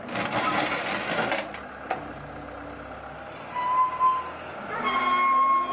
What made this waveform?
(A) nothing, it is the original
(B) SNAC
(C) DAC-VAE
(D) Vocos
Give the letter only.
A